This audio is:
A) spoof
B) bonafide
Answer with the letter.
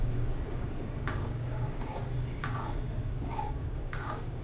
A